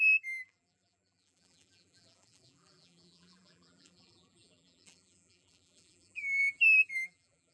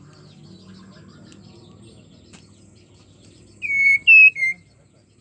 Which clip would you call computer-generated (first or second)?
first